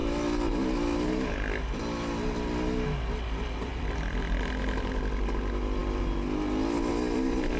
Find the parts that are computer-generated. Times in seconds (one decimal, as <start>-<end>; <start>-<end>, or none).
3.7-4.4